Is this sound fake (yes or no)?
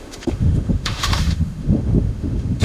yes